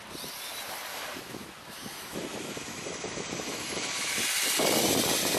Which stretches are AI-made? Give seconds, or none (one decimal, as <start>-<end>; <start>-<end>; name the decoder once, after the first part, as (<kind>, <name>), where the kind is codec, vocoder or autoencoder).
0.9-4.1 (autoencoder, DAC-VAE)